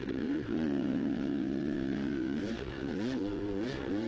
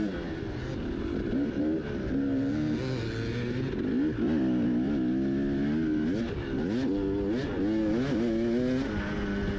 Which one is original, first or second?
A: second